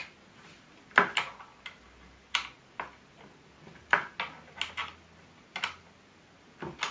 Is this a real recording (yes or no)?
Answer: yes